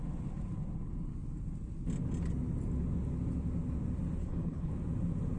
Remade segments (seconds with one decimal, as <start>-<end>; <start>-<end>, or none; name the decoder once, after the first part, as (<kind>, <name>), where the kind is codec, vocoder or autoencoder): 4.2-4.7 (codec, HILCodec)